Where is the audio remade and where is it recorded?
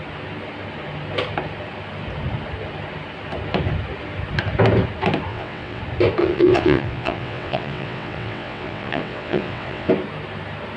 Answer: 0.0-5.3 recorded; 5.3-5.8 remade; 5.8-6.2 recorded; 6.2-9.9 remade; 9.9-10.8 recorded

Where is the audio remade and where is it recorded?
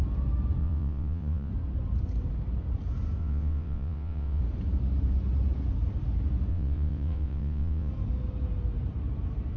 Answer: 0.0-0.6 recorded; 0.6-1.5 remade; 1.5-3.2 recorded; 3.2-4.4 remade; 4.4-6.5 recorded; 6.5-7.9 remade; 7.9-9.6 recorded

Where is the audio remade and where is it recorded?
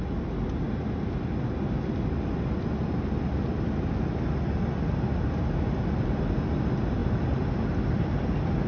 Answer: 0.0-8.7 recorded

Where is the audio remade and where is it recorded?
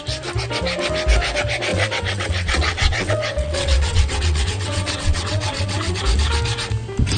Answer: 0.0-1.7 recorded; 1.7-6.0 remade; 6.0-7.2 recorded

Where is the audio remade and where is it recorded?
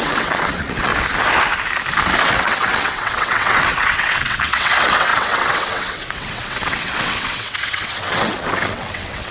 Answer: 0.0-0.9 remade; 0.9-2.2 recorded; 2.2-9.3 remade